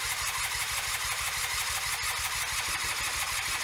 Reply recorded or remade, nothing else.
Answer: recorded